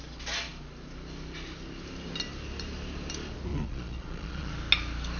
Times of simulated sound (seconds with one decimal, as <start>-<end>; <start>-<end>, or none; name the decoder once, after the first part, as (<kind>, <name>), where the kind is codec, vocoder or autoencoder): 3.5-4.5 (vocoder, Vocos)